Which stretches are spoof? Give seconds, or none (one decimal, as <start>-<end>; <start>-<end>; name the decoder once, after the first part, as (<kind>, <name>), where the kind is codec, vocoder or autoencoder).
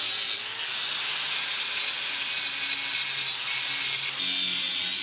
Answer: none